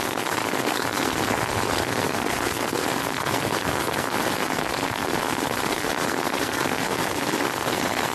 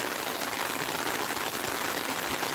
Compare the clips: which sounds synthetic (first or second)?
first